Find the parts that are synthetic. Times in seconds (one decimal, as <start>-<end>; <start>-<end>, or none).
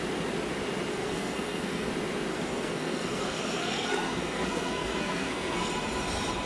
0.9-1.9; 2.3-5.7